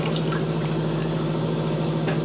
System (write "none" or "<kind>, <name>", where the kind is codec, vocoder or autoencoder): vocoder, BigVGAN v2